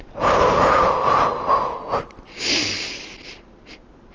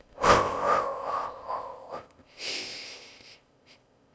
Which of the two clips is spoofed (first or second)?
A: second